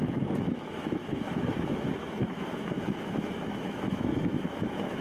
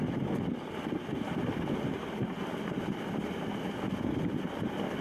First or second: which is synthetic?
first